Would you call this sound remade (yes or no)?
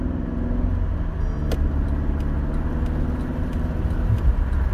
no